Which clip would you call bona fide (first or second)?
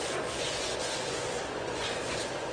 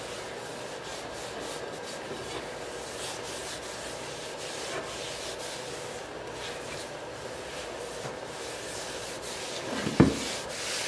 second